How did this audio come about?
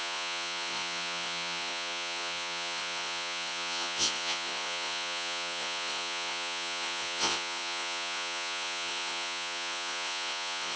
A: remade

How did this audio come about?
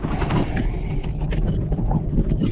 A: recorded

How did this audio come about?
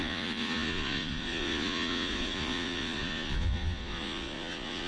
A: remade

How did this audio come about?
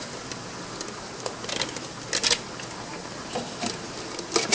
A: recorded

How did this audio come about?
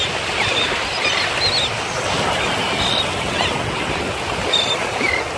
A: recorded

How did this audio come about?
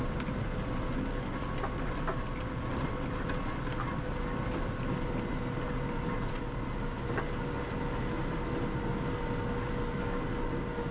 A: recorded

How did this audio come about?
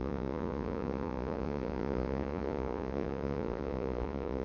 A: remade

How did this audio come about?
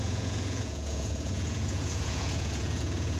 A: remade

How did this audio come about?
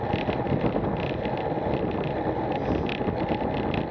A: recorded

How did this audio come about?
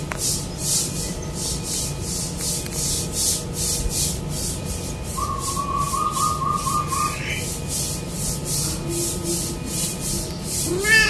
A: recorded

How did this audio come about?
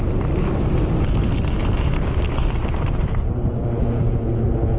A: recorded